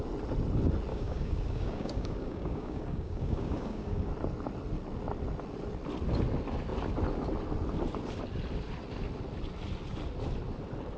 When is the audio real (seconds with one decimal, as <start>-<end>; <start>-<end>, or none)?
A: 0.0-0.9; 4.1-11.0